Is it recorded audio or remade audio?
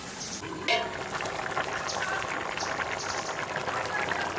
recorded